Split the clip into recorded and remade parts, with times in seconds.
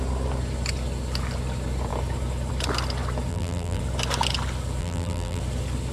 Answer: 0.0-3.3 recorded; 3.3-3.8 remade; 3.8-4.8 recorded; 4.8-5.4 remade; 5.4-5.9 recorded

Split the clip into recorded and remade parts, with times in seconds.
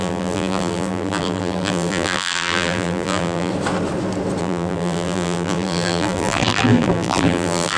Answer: 0.0-3.5 remade; 3.5-4.4 recorded; 4.4-7.8 remade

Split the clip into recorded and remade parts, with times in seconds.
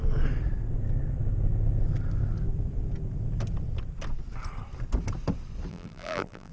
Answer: 0.0-5.7 recorded; 5.7-6.5 remade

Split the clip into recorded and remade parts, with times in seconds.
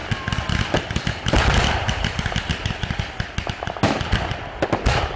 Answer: 0.0-5.2 recorded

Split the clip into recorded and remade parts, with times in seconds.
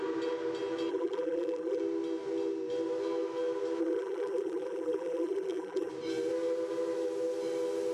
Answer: 0.0-0.9 recorded; 0.9-1.8 remade; 1.8-3.8 recorded; 3.8-5.9 remade; 5.9-7.9 recorded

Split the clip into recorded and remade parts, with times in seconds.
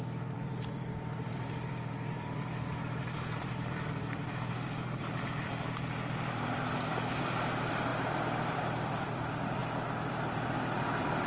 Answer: 0.0-9.6 remade; 9.6-10.1 recorded; 10.1-11.3 remade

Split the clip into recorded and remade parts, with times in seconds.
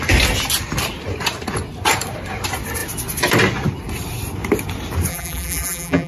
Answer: 0.0-5.1 recorded; 5.1-6.1 remade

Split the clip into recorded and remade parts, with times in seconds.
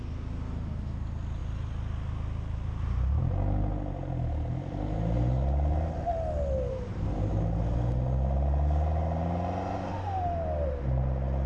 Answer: 0.0-11.5 recorded